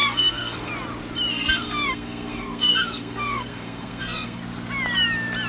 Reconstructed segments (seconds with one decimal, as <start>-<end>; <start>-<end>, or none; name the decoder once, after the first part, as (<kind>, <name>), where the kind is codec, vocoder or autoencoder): 0.0-0.7 (codec, SNAC); 1.3-4.4

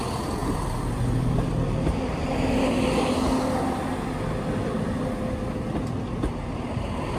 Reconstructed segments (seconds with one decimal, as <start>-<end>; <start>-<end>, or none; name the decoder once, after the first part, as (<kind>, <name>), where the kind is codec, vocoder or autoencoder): 0.4-3.2 (vocoder, BigVGAN v2)

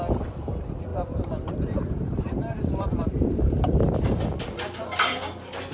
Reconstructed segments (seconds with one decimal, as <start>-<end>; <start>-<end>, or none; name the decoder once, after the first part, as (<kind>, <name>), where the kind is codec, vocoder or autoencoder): 0.9-4.2 (vocoder, BigVGAN v2)

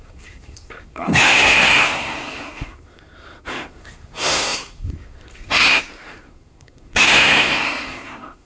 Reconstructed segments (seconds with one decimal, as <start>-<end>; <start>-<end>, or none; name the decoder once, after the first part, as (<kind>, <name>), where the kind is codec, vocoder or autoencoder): 0.0-8.5 (codec, SNAC)

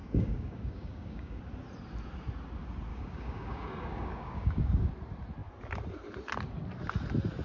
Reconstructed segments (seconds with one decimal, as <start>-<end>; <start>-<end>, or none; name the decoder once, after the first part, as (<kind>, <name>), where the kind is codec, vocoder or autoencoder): 0.0-1.4 (codec, DAC); 2.9-4.9

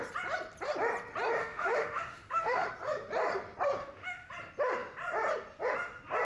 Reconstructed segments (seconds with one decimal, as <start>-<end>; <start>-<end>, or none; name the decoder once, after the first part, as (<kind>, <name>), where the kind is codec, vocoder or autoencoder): 1.4-2.7 (autoencoder, DAC-VAE); 3.8-4.3